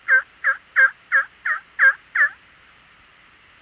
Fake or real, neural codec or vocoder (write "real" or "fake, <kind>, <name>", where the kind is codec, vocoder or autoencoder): fake, vocoder, BigVGAN v2